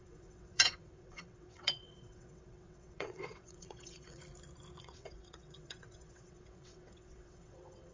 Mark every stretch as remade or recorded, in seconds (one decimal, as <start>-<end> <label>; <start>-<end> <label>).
0.0-4.2 remade; 4.2-4.8 recorded; 4.8-7.9 remade